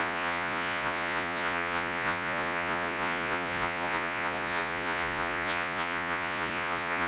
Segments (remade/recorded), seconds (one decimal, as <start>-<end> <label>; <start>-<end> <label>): 0.0-7.1 remade